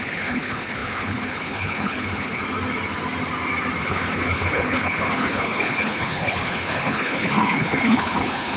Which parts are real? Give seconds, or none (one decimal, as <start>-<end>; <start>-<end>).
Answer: 2.4-3.8